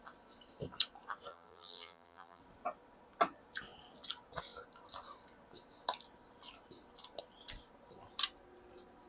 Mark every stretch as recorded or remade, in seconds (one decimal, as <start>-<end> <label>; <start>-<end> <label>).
0.0-1.3 recorded; 1.3-2.4 remade; 2.4-9.1 recorded